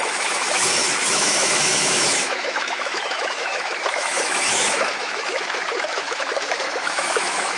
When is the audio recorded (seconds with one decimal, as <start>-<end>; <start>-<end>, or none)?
none